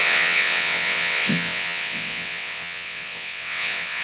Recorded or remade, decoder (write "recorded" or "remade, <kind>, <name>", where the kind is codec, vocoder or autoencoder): remade, vocoder, WaveNeXt